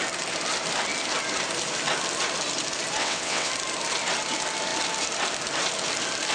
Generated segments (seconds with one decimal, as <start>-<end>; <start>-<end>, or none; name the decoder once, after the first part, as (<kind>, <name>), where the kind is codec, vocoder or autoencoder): 3.0-3.5 (vocoder, WaveNeXt)